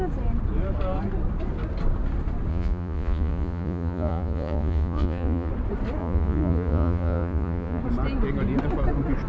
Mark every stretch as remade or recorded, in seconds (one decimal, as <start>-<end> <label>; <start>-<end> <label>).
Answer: 0.0-2.5 recorded; 2.5-5.5 remade; 5.5-6.0 recorded; 6.0-7.8 remade; 7.8-9.3 recorded